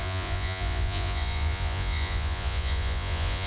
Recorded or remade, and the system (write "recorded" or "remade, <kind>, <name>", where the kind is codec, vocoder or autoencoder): remade, vocoder, Vocos